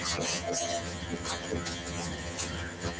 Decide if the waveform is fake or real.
fake